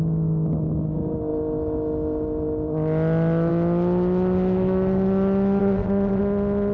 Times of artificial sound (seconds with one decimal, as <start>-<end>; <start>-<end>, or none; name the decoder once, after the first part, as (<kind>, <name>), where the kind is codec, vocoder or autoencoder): 5.6-6.2 (vocoder, Vocos)